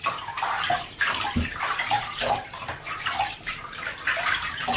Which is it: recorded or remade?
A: remade